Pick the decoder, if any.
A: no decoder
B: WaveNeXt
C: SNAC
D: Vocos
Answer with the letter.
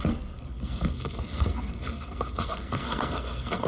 C